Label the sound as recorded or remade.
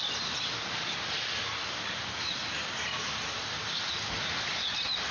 recorded